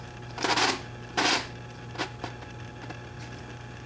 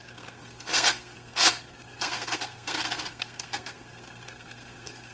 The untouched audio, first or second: first